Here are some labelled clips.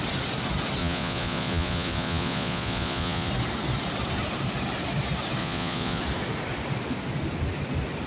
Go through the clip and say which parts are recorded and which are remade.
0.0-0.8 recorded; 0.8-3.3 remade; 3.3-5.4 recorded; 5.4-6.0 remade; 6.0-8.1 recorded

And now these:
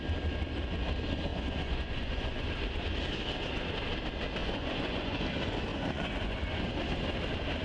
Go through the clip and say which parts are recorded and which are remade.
0.0-1.3 recorded; 1.3-2.5 remade; 2.5-4.4 recorded; 4.4-5.2 remade; 5.2-5.7 recorded; 5.7-6.7 remade; 6.7-7.6 recorded

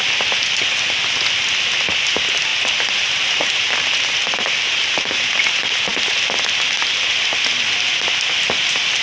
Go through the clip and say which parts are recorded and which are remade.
0.0-9.0 recorded

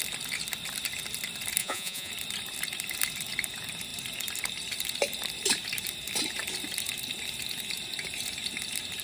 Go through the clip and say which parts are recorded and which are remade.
0.0-1.6 recorded; 1.6-2.1 remade; 2.1-9.0 recorded

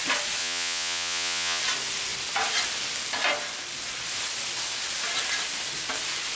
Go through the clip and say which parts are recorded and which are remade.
0.0-0.4 recorded; 0.4-1.6 remade; 1.6-6.4 recorded

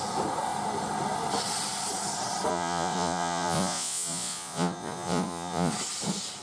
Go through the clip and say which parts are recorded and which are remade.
0.0-2.5 recorded; 2.5-5.7 remade; 5.7-6.4 recorded

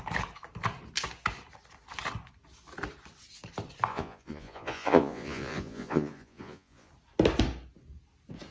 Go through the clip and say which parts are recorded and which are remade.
0.0-3.9 recorded; 3.9-6.9 remade; 6.9-8.5 recorded